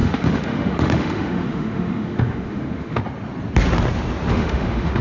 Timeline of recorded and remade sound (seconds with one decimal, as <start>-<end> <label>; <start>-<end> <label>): 0.0-3.0 remade; 3.0-4.3 recorded; 4.3-5.0 remade